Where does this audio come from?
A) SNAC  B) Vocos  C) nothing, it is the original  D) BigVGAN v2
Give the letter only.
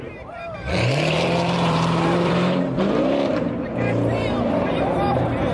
D